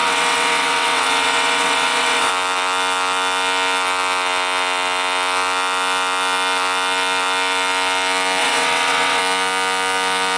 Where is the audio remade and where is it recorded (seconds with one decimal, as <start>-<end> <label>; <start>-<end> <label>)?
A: 0.0-2.3 remade; 2.3-8.4 recorded; 8.4-9.2 remade; 9.2-10.4 recorded